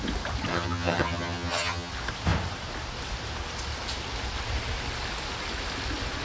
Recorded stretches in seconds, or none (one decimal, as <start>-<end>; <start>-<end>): 0.0-0.5; 1.9-6.2